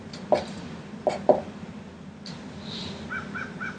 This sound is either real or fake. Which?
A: real